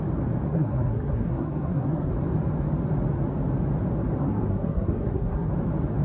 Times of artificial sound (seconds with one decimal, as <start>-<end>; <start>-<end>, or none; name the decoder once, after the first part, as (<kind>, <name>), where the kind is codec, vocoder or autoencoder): 0.5-2.1 (codec, SNAC); 4.2-5.5